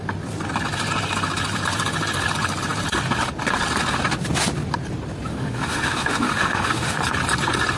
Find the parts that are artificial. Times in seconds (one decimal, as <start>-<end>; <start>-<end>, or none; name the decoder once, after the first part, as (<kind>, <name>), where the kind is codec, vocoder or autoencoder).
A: 5.3-7.0 (autoencoder, DAC-VAE)